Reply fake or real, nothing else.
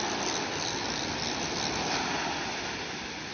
real